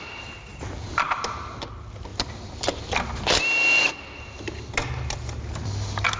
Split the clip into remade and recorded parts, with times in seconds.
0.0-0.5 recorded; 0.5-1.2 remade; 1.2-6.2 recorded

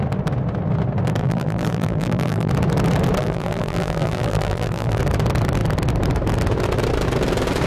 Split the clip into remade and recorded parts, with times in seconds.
0.0-1.2 recorded; 1.2-2.5 remade; 2.5-3.2 recorded; 3.2-5.0 remade; 5.0-7.7 recorded

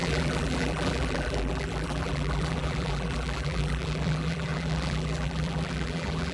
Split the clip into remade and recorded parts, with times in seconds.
0.0-6.3 remade

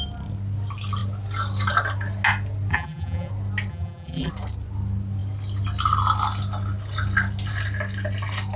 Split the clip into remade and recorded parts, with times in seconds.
0.0-2.7 recorded; 2.7-3.3 remade; 3.3-3.7 recorded; 3.7-4.3 remade; 4.3-8.6 recorded

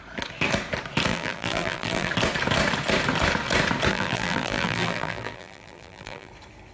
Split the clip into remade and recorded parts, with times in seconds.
0.0-1.1 recorded; 1.1-2.1 remade; 2.1-3.9 recorded; 3.9-6.3 remade; 6.3-6.7 recorded

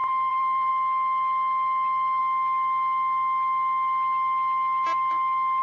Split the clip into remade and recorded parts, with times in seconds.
0.0-0.7 remade; 0.7-5.6 recorded

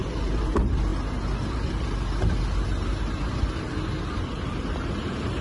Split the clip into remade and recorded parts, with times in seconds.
0.0-0.9 remade; 0.9-4.0 recorded; 4.0-5.4 remade